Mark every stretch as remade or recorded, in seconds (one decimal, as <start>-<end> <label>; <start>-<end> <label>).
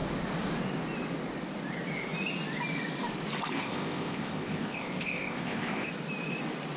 0.0-3.5 recorded; 3.5-5.9 remade; 5.9-6.8 recorded